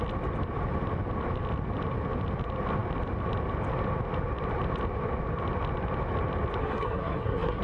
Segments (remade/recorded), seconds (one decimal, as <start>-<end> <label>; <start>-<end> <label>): 0.0-6.6 recorded; 6.6-7.6 remade